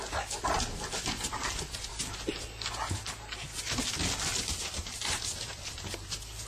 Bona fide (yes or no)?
yes